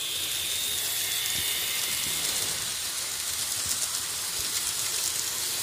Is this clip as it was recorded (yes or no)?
yes